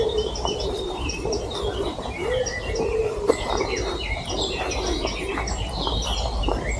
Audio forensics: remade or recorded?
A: remade